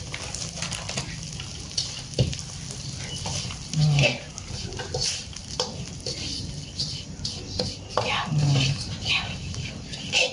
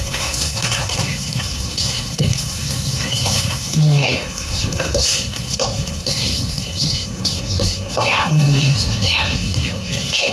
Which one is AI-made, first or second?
second